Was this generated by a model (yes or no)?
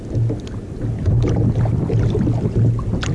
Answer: no